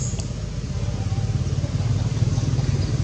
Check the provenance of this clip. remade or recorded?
recorded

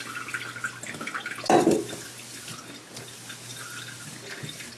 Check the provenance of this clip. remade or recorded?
recorded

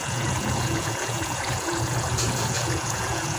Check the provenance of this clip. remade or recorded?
remade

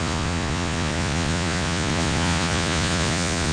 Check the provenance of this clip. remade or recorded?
remade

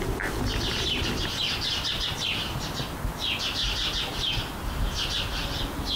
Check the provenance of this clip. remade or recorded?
recorded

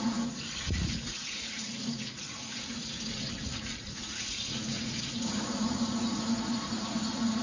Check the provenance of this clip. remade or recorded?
remade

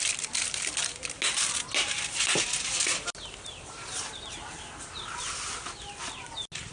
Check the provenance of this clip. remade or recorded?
recorded